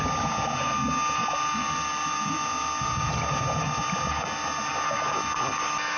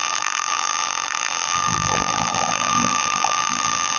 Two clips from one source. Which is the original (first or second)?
first